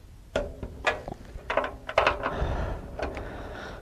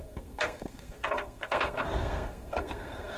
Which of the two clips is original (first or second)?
first